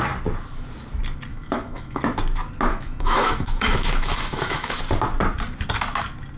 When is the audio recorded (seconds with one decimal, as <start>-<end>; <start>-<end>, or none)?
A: 0.0-1.3; 2.0-2.7; 4.8-6.4